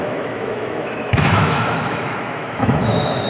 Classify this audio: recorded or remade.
remade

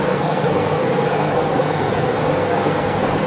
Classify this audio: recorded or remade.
remade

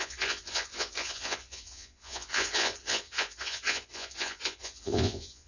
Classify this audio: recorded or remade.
remade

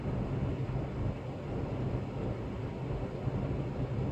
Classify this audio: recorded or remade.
recorded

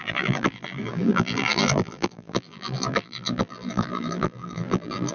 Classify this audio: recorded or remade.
remade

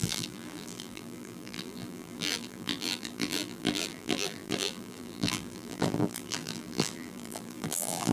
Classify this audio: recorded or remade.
remade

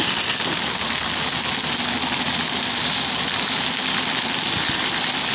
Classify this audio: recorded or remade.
recorded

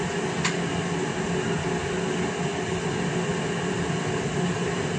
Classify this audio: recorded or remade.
recorded